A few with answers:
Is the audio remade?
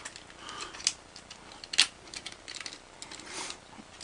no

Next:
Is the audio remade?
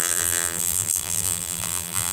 yes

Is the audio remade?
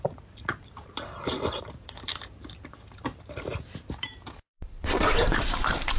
yes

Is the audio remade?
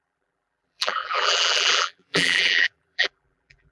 yes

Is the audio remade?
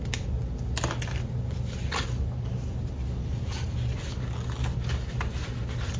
no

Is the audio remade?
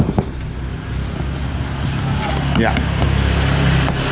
no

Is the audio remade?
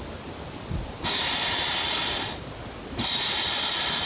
no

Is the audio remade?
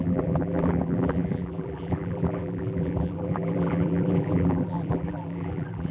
yes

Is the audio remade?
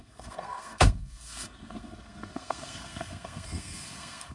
yes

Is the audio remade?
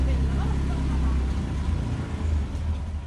no